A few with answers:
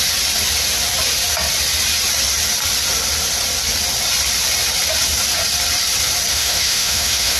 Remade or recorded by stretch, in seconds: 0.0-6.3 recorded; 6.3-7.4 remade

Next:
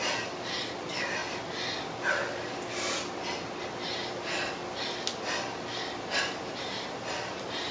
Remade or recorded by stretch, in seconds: 0.0-7.7 recorded

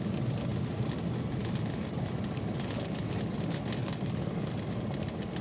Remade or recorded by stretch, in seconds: 0.0-3.8 recorded; 3.8-4.5 remade; 4.5-5.4 recorded